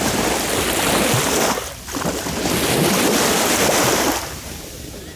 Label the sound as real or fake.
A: real